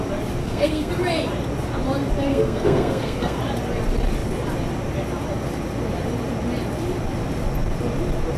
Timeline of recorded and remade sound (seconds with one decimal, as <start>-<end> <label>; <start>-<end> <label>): 0.0-0.4 recorded; 0.4-0.9 remade; 0.9-2.3 recorded; 2.3-3.4 remade; 3.4-8.4 recorded